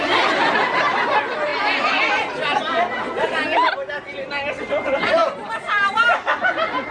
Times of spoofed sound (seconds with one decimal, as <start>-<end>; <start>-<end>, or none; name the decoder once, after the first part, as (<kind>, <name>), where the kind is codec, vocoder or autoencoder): none